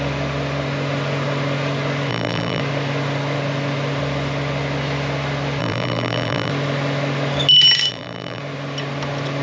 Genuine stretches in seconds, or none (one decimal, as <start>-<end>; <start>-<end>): 0.0-2.1; 2.6-5.6; 6.5-7.9; 8.4-9.4